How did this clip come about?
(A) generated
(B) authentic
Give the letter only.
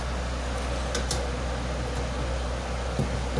B